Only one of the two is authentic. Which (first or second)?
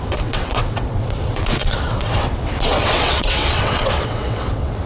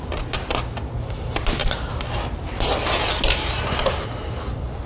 second